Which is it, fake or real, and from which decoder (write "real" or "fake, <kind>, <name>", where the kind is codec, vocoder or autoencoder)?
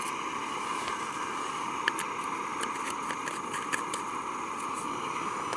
real